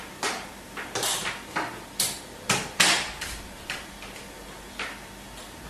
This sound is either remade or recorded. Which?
recorded